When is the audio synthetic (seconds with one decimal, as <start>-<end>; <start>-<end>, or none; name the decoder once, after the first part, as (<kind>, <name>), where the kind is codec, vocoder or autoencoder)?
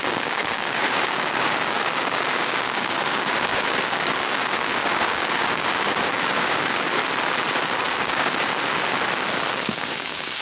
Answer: 0.0-7.0 (codec, DAC); 7.8-8.5; 9.5-10.4